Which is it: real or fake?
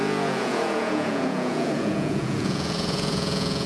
fake